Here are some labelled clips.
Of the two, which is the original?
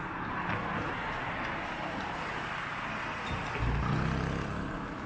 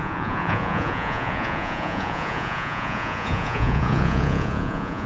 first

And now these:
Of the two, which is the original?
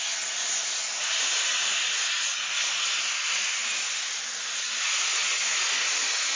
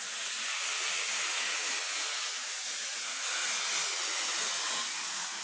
first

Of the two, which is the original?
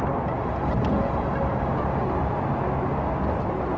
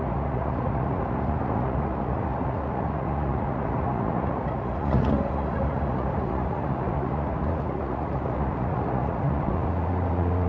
first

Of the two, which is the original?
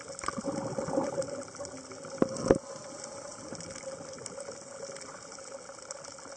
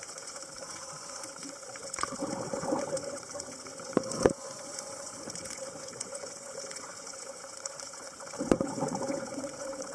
first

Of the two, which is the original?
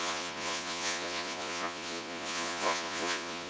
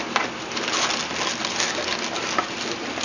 second